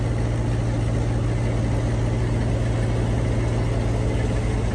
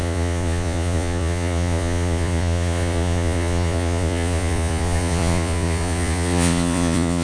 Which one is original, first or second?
first